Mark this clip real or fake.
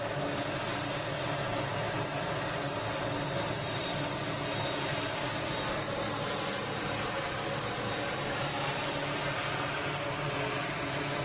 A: real